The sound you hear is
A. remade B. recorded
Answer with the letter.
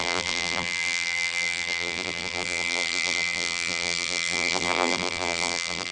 A